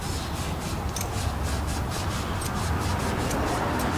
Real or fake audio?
real